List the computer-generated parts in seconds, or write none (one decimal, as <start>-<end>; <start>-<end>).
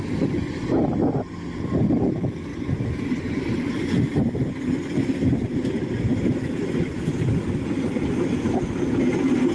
none